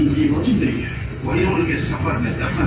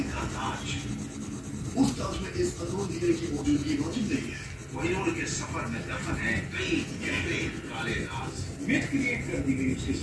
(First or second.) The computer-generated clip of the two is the first